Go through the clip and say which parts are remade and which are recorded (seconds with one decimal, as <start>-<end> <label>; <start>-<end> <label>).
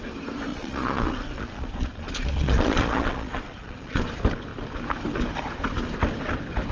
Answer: 0.0-0.5 recorded; 0.5-4.0 remade; 4.0-6.7 recorded